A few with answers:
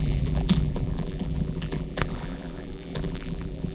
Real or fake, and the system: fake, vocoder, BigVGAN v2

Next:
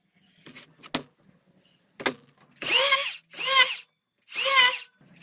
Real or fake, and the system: real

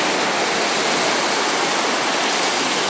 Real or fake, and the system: real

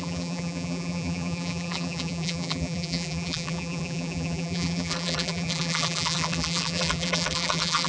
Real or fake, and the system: fake, vocoder, BigVGAN v2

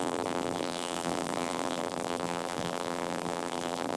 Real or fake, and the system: fake, vocoder, BigVGAN v2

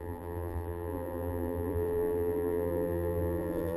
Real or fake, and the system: fake, vocoder, BigVGAN v2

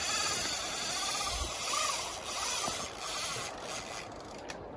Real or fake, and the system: real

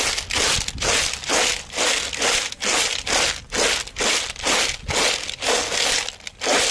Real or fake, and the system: real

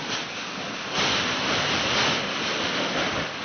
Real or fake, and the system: real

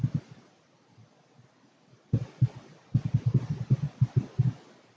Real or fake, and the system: real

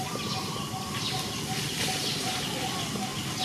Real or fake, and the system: real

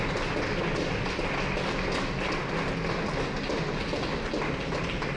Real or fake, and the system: real